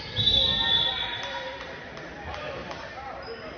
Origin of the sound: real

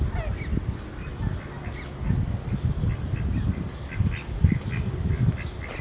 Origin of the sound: real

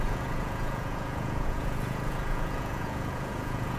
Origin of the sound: fake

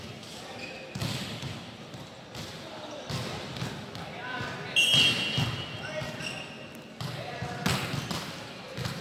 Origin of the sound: real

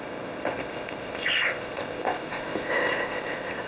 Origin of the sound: fake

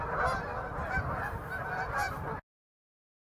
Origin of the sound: real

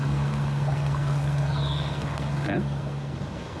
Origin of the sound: fake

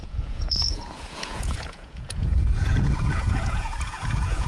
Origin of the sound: fake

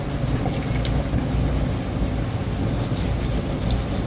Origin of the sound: real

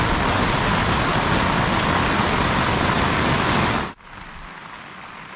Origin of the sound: real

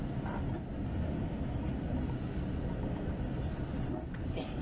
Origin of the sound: real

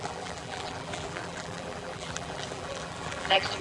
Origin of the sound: fake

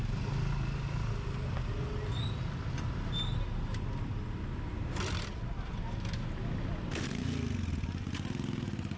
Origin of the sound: real